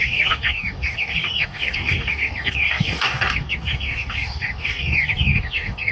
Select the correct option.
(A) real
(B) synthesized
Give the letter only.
B